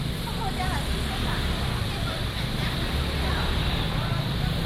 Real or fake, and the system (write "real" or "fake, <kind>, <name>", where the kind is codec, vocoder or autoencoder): real